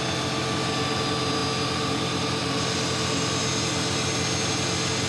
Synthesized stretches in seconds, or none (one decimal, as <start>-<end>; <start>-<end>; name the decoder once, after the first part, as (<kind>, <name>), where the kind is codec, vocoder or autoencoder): none